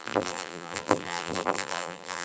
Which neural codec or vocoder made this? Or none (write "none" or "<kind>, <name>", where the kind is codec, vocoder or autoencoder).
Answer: vocoder, BigVGAN v2